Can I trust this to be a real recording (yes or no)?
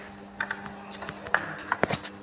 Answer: yes